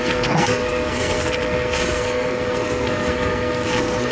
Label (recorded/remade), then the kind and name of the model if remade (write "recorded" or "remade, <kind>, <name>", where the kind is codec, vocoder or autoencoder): remade, codec, SNAC